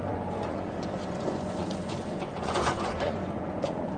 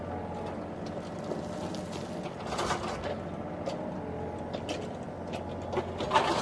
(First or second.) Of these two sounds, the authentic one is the second